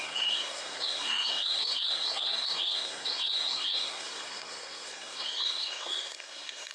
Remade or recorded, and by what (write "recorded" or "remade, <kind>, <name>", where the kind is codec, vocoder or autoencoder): remade, codec, SNAC